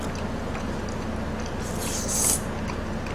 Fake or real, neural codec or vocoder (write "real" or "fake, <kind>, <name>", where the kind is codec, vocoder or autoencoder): real